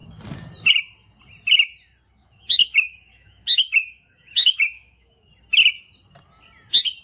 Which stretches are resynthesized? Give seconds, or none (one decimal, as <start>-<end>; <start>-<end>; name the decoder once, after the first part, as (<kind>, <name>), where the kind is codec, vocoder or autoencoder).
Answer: 2.2-5.3 (autoencoder, DAC-VAE)